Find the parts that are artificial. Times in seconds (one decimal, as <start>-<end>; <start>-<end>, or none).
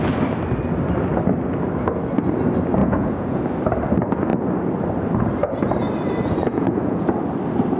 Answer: 2.8-3.4; 6.4-7.1